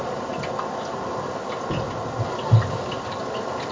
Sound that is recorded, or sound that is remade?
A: recorded